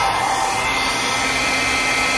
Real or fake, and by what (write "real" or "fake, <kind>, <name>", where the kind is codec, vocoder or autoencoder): real